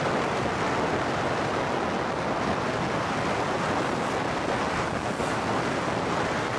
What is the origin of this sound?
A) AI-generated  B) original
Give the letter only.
B